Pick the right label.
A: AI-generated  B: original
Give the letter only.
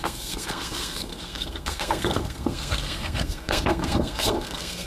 A